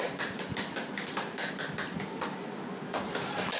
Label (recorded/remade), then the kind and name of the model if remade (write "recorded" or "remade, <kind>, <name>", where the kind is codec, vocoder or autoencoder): recorded